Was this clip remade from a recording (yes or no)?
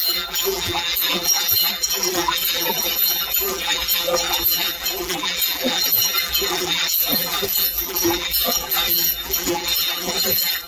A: yes